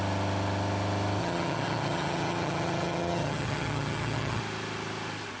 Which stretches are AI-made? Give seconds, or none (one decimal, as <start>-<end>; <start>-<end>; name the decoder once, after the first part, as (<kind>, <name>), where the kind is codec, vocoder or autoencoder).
1.2-4.4 (vocoder, HiFi-GAN)